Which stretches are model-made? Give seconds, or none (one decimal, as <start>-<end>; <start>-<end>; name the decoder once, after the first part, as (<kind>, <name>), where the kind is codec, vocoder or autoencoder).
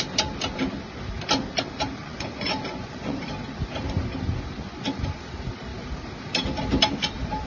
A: 2.0-3.3 (vocoder, Vocos)